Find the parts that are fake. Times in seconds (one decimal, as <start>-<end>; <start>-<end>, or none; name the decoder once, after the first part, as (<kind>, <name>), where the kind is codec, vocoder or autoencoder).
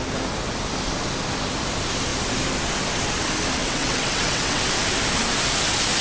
3.6-4.6 (vocoder, WaveNeXt)